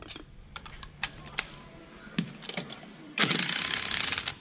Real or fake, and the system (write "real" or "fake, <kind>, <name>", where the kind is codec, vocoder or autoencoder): fake, vocoder, BigVGAN v2